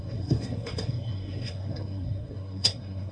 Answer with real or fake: fake